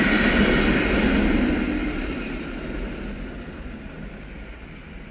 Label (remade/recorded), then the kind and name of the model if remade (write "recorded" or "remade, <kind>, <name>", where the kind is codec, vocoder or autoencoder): recorded